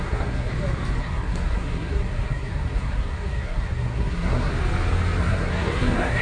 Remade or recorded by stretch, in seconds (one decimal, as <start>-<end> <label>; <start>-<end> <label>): 0.0-0.5 remade; 0.5-1.0 recorded; 1.0-4.5 remade; 4.5-5.2 recorded; 5.2-6.2 remade